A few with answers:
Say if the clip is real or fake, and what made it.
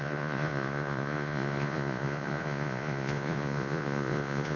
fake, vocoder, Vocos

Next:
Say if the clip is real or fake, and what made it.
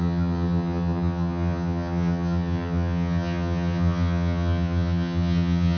fake, vocoder, HiFi-GAN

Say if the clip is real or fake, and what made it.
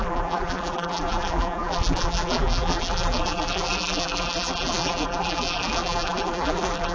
fake, vocoder, BigVGAN v2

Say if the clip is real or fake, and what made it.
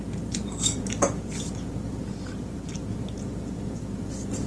real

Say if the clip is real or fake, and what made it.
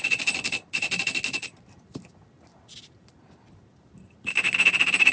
real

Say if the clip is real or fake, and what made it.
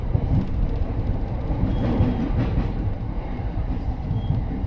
fake, vocoder, BigVGAN v2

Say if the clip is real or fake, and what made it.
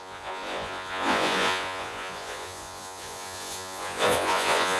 fake, vocoder, Vocos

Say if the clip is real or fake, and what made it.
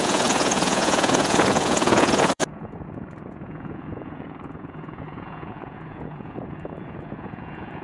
fake, vocoder, Vocos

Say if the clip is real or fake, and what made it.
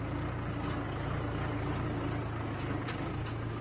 real